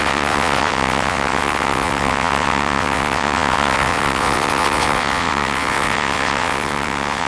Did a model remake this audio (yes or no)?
yes